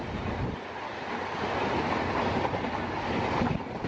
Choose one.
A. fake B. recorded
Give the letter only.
B